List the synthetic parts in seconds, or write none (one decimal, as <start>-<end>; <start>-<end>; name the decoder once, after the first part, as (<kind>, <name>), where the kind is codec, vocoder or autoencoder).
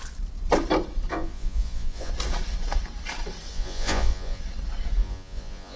1.1-2.1 (vocoder, Vocos); 3.5-4.4; 5.0-5.8